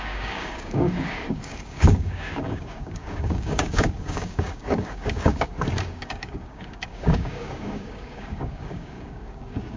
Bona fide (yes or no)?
no